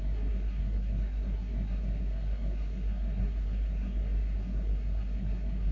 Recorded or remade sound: remade